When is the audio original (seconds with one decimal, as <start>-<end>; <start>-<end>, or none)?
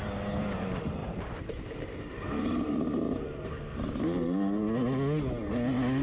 0.0-1.0; 4.6-6.0